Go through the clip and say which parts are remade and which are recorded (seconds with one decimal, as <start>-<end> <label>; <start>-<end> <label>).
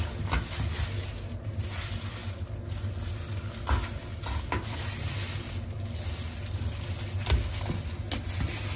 0.0-8.8 recorded